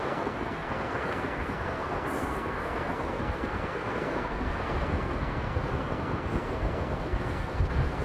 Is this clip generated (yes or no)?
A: yes